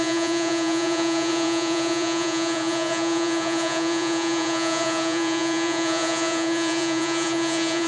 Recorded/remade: remade